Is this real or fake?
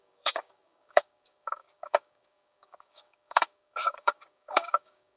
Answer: fake